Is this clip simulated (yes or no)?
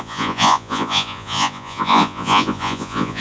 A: yes